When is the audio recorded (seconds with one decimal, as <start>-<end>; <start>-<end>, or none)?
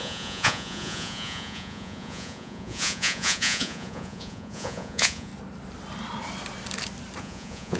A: 5.3-7.2